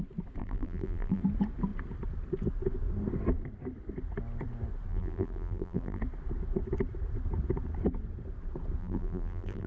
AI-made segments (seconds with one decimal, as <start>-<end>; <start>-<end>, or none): 0.4-1.2; 4.9-6.0; 8.8-9.7